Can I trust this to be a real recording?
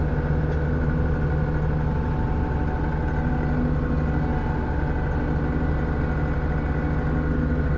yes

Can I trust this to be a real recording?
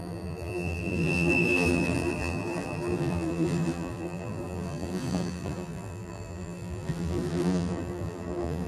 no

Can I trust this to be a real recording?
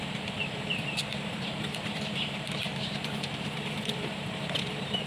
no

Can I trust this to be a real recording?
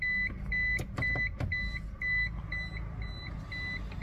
yes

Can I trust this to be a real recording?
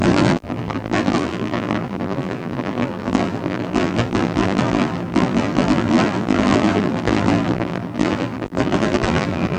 no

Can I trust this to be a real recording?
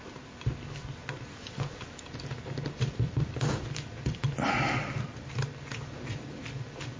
yes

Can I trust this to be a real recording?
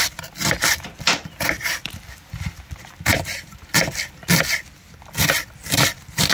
no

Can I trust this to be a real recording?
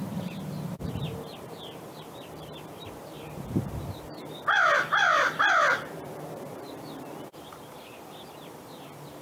no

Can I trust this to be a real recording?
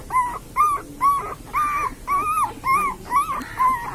yes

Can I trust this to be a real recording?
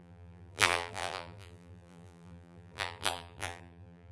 no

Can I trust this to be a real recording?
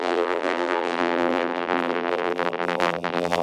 no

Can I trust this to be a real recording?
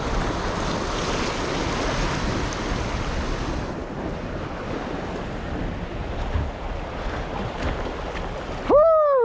yes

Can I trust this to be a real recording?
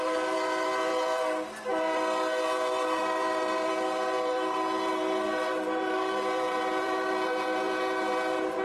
no